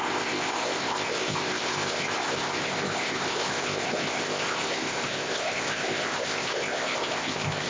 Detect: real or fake fake